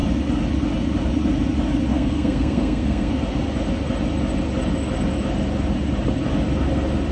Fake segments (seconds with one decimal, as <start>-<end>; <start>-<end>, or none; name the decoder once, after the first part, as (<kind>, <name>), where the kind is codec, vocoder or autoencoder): 1.9-3.1 (codec, SNAC)